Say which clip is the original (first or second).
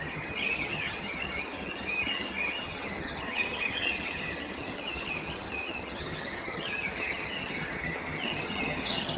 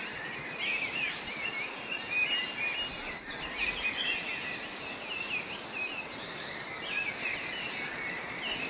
second